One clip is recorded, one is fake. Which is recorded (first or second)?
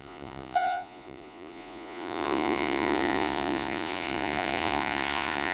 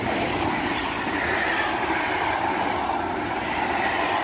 second